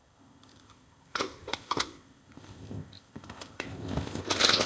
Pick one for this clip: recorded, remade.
remade